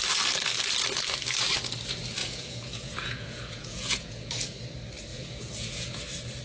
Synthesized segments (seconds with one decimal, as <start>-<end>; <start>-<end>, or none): 2.2-4.3; 5.1-6.0